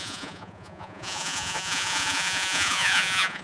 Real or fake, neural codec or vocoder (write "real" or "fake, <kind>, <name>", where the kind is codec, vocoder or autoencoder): fake, vocoder, Vocos